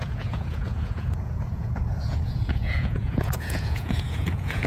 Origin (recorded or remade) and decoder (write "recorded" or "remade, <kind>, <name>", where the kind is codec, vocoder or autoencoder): remade, vocoder, Vocos